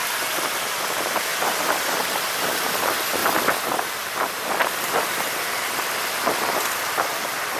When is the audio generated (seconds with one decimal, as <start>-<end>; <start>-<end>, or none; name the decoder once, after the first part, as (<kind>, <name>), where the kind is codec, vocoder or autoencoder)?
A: 3.2-5.8 (vocoder, BigVGAN v2)